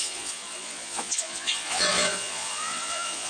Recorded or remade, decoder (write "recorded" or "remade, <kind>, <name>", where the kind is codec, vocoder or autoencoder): remade, vocoder, Vocos